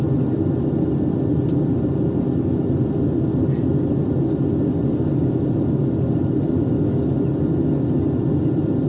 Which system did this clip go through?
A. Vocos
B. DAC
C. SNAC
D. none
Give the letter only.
D